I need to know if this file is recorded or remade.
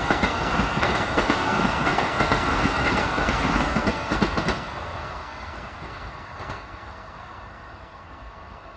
remade